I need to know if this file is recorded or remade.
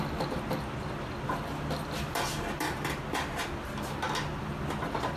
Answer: recorded